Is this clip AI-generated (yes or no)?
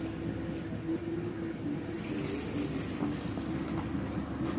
no